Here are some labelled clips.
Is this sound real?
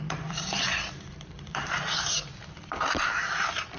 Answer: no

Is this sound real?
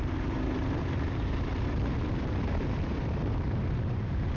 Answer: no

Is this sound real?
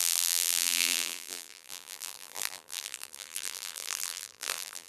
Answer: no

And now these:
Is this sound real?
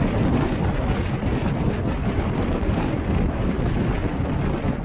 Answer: no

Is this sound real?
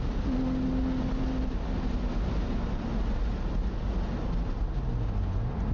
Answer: yes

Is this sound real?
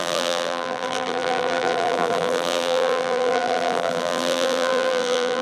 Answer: no